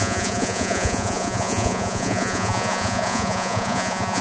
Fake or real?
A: fake